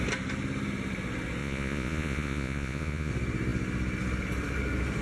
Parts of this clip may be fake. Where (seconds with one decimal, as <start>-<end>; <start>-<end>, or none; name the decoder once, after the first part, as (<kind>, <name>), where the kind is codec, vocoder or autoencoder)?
1.4-3.1 (vocoder, Vocos)

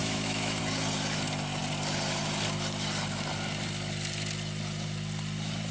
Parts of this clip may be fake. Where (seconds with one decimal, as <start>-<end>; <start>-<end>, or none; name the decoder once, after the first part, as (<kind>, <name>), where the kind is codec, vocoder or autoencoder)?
0.0-0.6 (autoencoder, DAC-VAE)

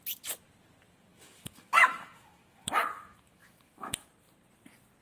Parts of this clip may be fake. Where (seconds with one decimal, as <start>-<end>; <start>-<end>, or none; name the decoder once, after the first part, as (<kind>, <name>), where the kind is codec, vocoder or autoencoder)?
1.1-4.1 (autoencoder, DAC-VAE)

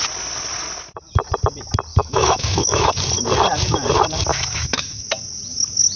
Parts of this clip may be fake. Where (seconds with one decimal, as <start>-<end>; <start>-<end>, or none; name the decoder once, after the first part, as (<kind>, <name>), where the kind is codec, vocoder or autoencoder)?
1.9-2.9 (autoencoder, DAC-VAE); 4.3-5.1